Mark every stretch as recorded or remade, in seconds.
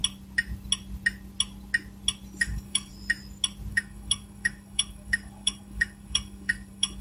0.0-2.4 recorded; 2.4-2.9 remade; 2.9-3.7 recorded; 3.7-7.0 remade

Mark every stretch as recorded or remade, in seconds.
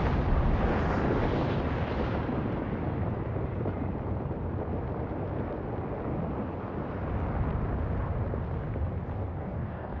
0.0-9.4 recorded; 9.4-10.0 remade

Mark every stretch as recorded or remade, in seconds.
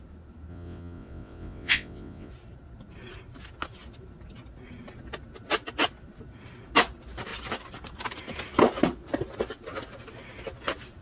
0.0-0.5 recorded; 0.5-2.3 remade; 2.3-11.0 recorded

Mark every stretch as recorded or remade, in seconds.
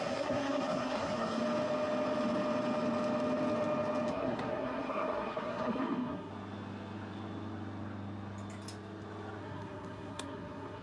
0.0-1.4 remade; 1.4-4.1 recorded; 4.1-6.3 remade; 6.3-9.4 recorded; 9.4-10.8 remade